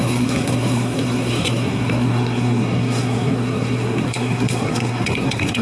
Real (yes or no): no